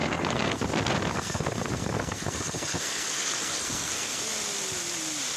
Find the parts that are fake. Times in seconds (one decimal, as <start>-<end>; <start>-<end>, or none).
0.0-0.7; 1.1-4.3